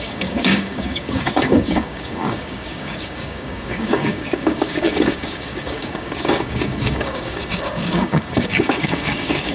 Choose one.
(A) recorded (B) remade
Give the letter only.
B